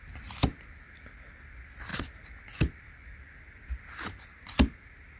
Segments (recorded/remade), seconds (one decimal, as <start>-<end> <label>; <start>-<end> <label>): 0.0-5.2 recorded